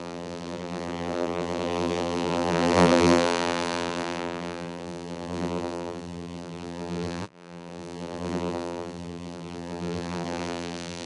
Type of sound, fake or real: fake